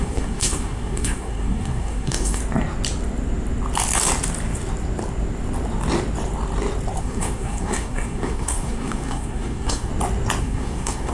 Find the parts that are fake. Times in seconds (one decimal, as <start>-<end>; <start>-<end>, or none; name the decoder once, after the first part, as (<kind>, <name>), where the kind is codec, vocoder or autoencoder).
0.0-2.4 (codec, SNAC); 7.0-9.9; 10.4-11.1